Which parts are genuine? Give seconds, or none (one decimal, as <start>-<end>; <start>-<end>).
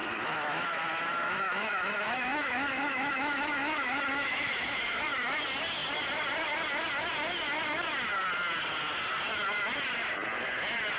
5.0-11.0